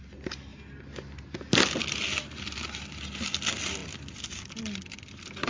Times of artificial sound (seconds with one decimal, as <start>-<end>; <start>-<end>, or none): none